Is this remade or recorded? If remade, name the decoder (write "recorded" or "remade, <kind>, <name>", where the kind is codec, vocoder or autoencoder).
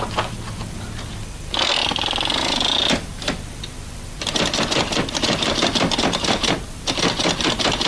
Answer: recorded